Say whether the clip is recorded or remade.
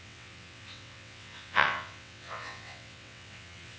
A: remade